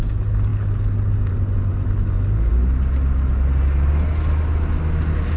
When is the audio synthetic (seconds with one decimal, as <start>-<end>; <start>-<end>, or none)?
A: none